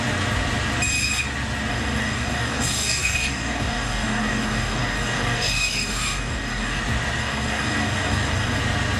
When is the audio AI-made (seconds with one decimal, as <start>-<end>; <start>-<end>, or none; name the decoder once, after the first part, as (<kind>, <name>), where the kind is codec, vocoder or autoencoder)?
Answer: 1.7-6.8 (codec, DAC); 7.2-8.6